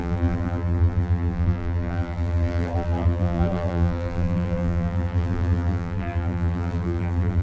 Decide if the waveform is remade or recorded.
remade